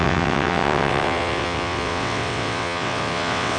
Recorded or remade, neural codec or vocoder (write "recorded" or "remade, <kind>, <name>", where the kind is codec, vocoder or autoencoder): remade, vocoder, WaveNeXt